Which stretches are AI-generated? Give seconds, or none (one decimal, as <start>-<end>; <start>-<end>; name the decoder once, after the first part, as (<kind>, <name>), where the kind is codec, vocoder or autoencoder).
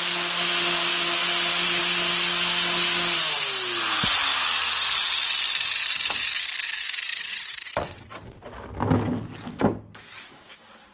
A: 7.1-8.4 (vocoder, WaveNeXt)